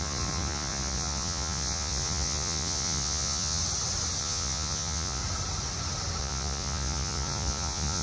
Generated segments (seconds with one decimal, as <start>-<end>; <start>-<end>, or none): 0.0-3.6; 4.2-5.2; 6.2-8.0